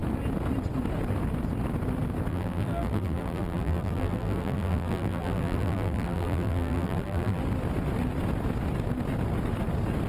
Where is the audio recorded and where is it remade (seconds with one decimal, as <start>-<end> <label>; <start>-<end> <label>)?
0.0-2.3 recorded; 2.3-7.4 remade; 7.4-10.1 recorded